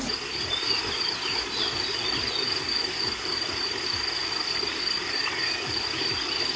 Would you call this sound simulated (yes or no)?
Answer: no